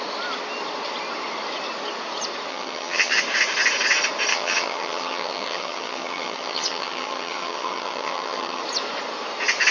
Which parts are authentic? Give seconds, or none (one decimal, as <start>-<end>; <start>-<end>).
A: 0.0-2.5; 3.2-4.3; 8.6-9.7